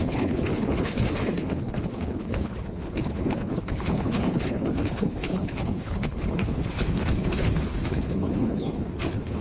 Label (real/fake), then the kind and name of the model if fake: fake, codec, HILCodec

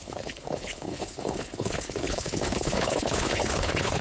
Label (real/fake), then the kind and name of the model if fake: fake, codec, HILCodec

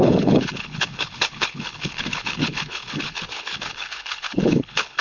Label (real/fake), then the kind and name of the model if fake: fake, codec, HILCodec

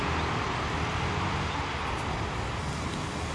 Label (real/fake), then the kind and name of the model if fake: real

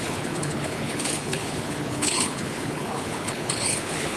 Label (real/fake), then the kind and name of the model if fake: fake, codec, HILCodec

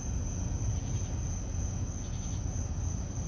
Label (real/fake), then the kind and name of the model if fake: real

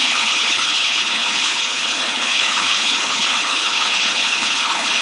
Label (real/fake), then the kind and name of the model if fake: fake, codec, HILCodec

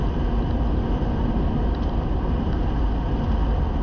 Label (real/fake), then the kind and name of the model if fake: real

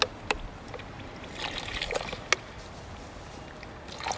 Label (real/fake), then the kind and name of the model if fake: real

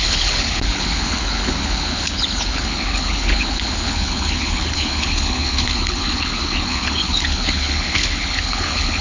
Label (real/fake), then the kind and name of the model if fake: fake, codec, HILCodec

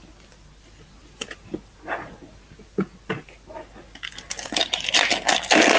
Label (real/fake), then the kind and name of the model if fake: real